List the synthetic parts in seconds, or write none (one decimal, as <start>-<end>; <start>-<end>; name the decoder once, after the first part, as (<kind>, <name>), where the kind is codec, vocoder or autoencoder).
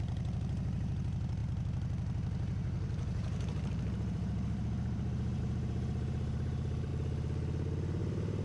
0.0-6.9 (vocoder, BigVGAN v2); 8.0-8.4